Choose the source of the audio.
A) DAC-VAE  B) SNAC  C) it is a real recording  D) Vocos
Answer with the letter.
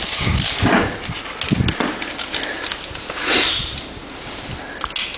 C